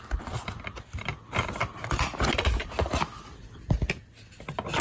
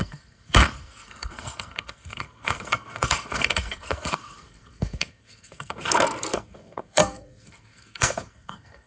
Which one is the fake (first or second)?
second